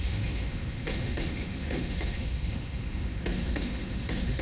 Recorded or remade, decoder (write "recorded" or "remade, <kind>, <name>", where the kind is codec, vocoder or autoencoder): remade, autoencoder, DAC-VAE